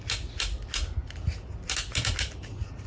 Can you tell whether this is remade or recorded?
recorded